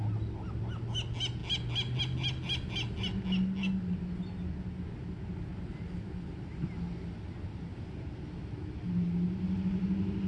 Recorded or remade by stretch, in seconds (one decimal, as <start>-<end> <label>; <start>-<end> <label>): 0.0-10.3 recorded